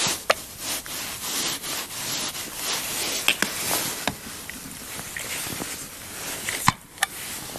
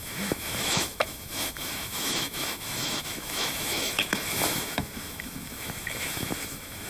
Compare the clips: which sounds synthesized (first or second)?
second